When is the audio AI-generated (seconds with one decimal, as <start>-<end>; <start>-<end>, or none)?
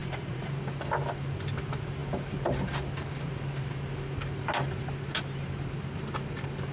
0.0-0.5